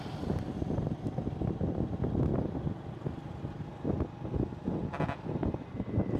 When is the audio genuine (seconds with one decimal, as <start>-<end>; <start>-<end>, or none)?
0.0-6.2